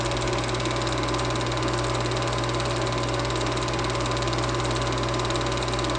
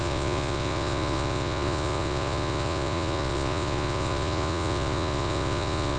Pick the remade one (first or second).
second